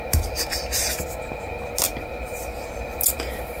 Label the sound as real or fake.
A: real